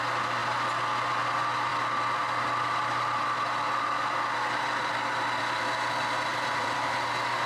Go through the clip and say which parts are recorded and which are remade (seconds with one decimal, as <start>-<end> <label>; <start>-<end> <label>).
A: 0.0-6.3 recorded; 6.3-6.9 remade; 6.9-7.5 recorded